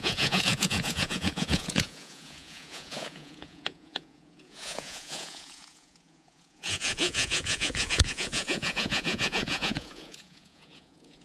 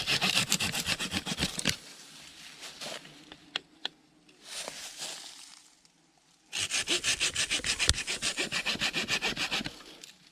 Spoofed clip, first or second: first